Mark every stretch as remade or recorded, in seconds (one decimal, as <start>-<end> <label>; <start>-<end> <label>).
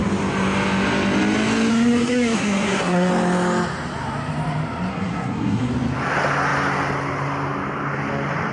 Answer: 0.0-1.7 recorded; 1.7-3.1 remade; 3.1-4.9 recorded; 4.9-5.7 remade; 5.7-8.5 recorded